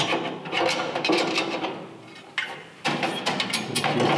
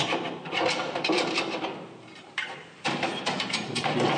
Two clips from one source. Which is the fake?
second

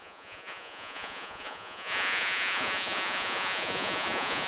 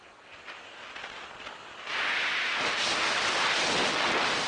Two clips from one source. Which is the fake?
first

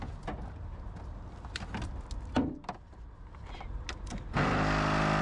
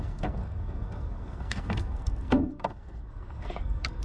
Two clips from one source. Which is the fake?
second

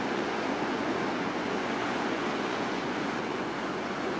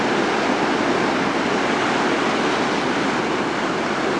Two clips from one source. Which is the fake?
first